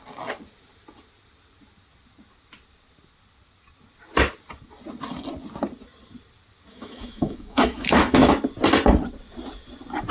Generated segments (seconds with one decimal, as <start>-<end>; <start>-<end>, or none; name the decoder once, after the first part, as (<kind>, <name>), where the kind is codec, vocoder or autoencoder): 6.7-8.3 (autoencoder, DAC-VAE)